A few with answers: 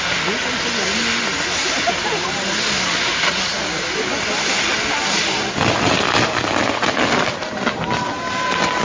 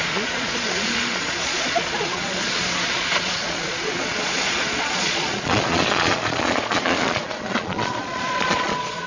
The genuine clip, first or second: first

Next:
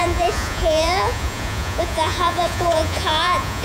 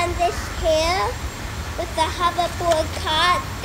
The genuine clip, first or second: second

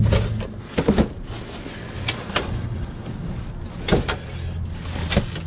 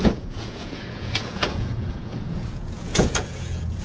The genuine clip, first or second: first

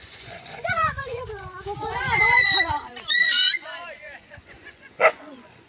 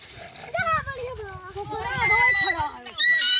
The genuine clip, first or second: second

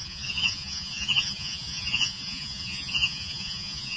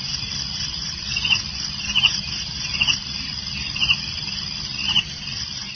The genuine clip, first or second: second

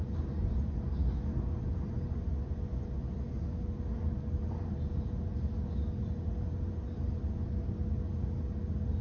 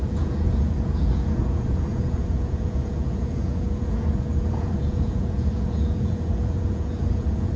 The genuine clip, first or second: first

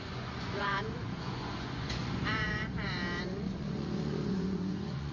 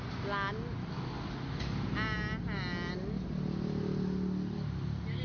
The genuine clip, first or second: second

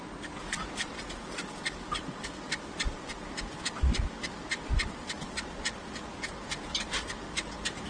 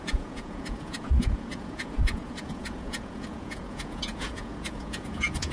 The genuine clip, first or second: first